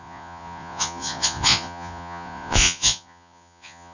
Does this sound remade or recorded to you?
remade